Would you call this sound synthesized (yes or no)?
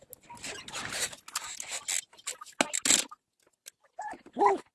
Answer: no